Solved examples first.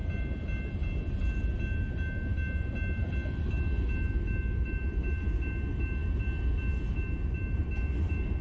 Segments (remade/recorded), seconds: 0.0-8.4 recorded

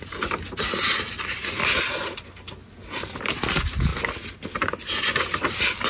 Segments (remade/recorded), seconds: 0.0-5.9 recorded